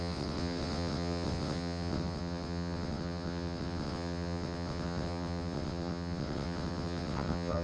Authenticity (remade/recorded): remade